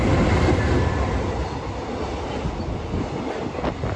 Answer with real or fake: real